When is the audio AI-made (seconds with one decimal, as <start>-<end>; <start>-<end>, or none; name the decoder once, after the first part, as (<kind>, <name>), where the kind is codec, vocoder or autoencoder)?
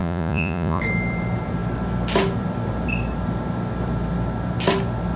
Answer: 0.0-0.8 (vocoder, Vocos)